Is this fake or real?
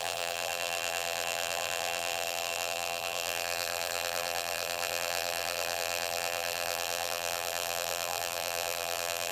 fake